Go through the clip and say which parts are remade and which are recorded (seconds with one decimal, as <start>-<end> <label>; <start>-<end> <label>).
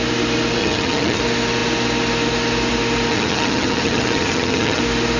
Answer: 0.0-0.6 recorded; 0.6-1.2 remade; 1.2-3.1 recorded; 3.1-4.8 remade; 4.8-5.2 recorded